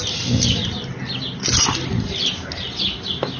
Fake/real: real